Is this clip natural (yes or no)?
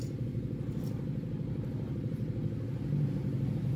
yes